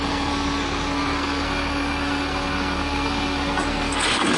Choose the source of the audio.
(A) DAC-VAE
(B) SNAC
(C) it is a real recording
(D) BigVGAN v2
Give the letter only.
B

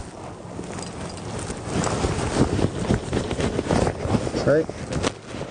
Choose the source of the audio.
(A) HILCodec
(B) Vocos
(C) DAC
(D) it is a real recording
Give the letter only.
D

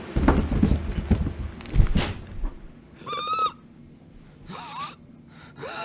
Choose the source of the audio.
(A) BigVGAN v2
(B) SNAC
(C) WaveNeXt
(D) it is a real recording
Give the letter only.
D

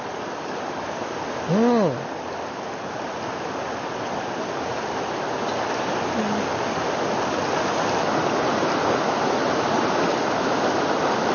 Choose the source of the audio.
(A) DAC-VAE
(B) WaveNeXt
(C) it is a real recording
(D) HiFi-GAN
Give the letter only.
C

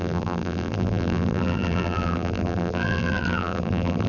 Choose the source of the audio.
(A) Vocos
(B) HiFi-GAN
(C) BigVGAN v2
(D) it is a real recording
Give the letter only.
C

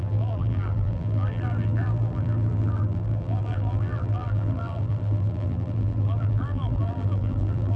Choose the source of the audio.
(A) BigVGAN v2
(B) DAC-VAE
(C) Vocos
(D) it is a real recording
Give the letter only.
A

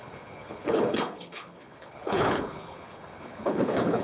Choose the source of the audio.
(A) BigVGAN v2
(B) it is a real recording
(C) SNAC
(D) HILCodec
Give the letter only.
D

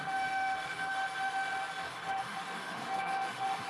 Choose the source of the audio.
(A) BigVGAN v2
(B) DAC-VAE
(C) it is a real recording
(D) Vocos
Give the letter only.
B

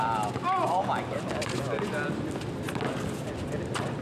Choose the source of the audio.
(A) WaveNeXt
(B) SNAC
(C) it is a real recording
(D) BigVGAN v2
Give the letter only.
C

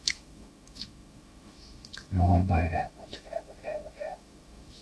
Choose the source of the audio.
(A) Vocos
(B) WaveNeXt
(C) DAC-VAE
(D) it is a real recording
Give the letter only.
C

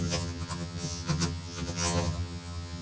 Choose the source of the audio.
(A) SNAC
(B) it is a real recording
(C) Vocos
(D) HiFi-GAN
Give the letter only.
D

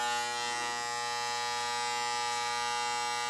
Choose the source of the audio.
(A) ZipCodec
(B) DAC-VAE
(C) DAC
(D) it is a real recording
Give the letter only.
D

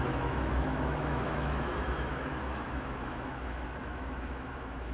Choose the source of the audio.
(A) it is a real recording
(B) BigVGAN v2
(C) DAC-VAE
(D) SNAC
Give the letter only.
C